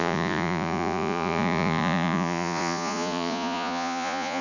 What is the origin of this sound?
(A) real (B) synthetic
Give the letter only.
B